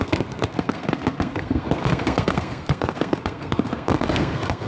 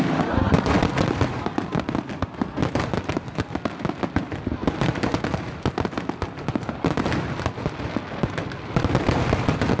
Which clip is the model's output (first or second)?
first